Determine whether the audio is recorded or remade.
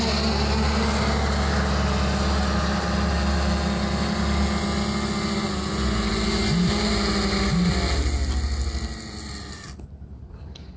recorded